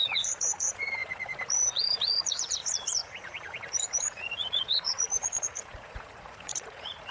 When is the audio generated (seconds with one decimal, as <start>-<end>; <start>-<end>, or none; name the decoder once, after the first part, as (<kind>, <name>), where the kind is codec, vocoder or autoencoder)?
0.0-7.1 (vocoder, Vocos)